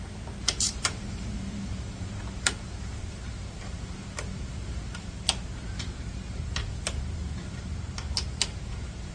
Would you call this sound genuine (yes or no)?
no